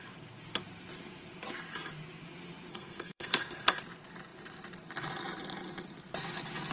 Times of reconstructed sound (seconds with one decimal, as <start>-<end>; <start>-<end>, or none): 2.7-3.8